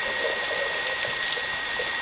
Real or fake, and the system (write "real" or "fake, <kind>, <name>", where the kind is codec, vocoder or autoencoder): real